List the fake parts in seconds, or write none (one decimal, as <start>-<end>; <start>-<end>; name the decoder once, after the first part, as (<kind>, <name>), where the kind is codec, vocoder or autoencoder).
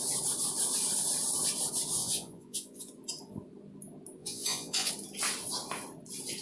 2.0-2.9 (vocoder, Vocos); 4.2-4.9